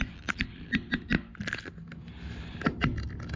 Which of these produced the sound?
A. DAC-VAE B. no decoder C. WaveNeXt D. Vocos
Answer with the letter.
B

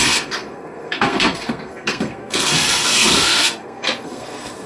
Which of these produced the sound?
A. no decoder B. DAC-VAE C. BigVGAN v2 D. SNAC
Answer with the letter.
D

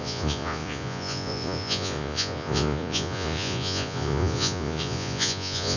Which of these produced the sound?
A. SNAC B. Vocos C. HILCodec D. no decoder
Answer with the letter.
B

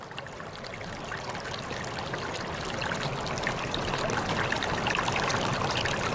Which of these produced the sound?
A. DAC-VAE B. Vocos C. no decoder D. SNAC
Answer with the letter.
C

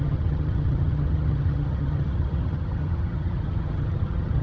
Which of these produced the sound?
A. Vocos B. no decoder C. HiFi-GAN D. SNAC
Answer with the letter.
C